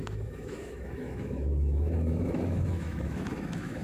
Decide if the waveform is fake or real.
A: fake